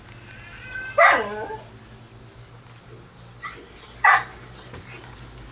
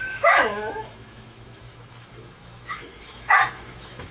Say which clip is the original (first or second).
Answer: first